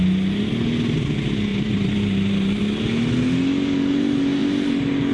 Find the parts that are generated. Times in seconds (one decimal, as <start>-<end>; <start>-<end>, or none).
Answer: 1.5-2.6